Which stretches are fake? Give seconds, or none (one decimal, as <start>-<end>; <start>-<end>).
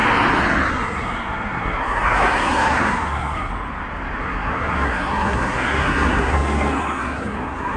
0.7-3.5; 4.2-7.8